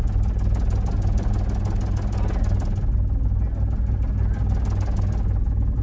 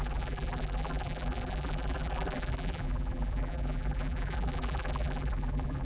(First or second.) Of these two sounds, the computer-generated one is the second